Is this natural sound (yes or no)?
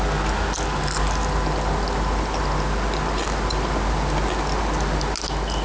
yes